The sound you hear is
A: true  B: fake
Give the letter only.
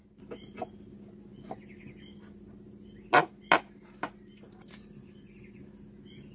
A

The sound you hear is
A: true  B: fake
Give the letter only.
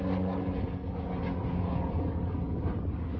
B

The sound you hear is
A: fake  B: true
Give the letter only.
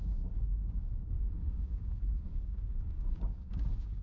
A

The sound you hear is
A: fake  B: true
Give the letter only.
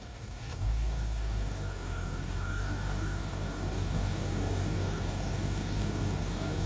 A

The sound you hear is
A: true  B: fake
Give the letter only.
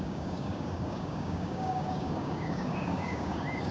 B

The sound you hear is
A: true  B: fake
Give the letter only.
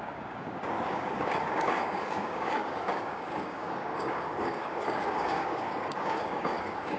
B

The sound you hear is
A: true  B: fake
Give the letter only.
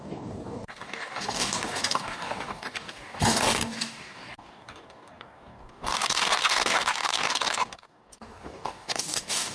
B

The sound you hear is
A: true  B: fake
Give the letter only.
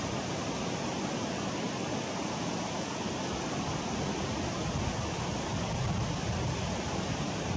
A